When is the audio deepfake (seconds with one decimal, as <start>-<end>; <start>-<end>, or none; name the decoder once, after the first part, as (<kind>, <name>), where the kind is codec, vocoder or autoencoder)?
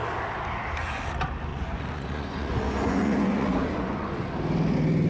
1.5-4.3 (vocoder, Vocos)